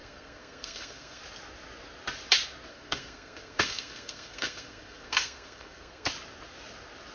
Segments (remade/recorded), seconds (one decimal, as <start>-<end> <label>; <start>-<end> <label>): 0.0-1.2 remade; 1.2-2.7 recorded; 2.7-6.1 remade; 6.1-7.1 recorded